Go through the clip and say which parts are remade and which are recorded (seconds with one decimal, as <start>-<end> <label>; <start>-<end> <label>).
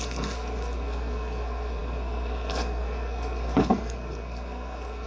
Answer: 0.0-5.1 remade